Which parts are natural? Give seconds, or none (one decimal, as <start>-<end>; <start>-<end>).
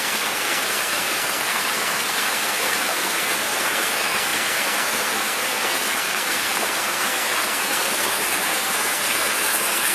none